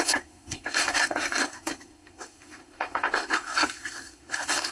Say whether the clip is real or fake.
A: fake